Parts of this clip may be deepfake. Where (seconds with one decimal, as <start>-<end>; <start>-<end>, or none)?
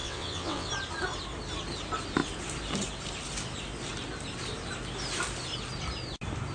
0.0-0.7